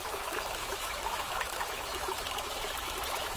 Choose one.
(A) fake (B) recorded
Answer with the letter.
A